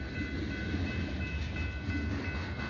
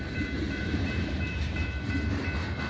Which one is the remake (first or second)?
second